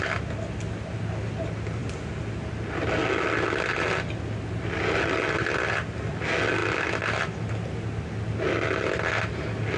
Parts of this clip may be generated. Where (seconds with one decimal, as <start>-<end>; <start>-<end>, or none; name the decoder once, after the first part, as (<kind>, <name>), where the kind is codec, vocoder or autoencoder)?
none

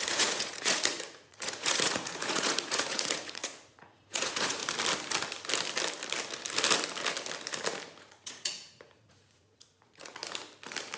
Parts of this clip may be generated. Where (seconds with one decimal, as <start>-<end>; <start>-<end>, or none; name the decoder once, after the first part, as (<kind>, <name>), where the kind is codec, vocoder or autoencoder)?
0.0-4.6 (vocoder, Vocos); 8.0-10.2

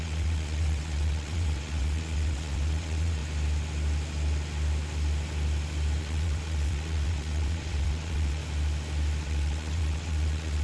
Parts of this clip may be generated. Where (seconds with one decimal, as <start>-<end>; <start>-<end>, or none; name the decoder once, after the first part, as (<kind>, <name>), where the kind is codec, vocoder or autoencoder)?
0.0-3.2 (vocoder, WaveNeXt); 6.0-8.4; 9.2-10.6

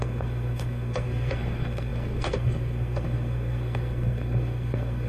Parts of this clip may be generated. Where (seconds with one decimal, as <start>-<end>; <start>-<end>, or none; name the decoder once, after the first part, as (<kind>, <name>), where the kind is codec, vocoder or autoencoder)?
0.0-5.1 (codec, SNAC)

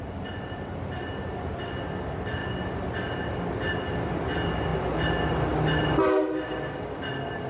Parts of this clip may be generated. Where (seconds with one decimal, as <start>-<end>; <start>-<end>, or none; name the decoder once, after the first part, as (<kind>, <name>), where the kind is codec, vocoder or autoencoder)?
none

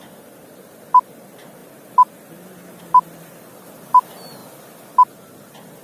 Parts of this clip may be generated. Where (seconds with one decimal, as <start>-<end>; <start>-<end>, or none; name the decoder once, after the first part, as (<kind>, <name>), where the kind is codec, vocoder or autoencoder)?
none